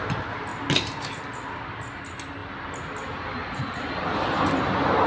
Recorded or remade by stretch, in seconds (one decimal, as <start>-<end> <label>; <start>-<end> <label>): 0.0-5.1 recorded